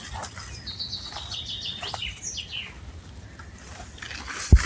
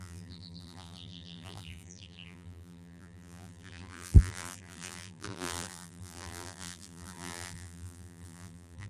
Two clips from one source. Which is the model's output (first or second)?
second